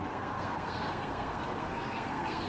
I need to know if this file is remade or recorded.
remade